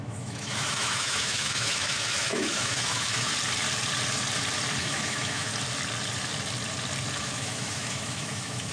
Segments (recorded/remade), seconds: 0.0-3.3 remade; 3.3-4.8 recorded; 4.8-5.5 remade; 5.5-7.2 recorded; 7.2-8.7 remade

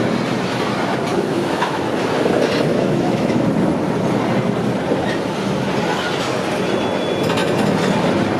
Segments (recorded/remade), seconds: 0.0-1.1 recorded; 1.1-1.9 remade; 1.9-2.7 recorded; 2.7-3.4 remade; 3.4-8.4 recorded

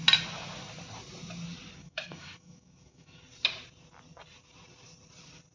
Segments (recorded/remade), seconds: 0.0-1.8 recorded; 1.8-3.2 remade; 3.2-5.5 recorded

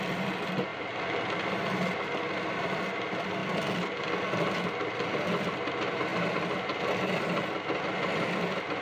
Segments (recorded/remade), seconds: 0.0-8.8 recorded

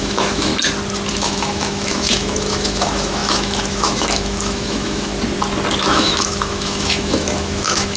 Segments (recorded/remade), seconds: 0.0-0.5 remade; 0.5-1.1 recorded; 1.1-5.1 remade; 5.1-5.8 recorded; 5.8-8.0 remade

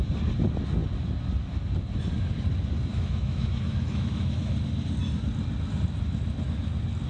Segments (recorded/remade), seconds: 0.0-2.9 recorded; 2.9-4.5 remade; 4.5-7.1 recorded

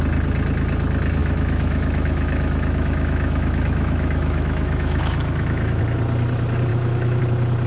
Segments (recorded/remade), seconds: 0.0-1.2 recorded; 1.2-5.8 remade; 5.8-6.7 recorded; 6.7-7.2 remade; 7.2-7.7 recorded